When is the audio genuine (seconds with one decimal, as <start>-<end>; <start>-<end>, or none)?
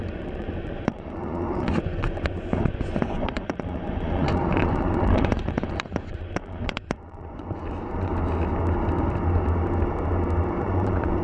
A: 8.1-10.6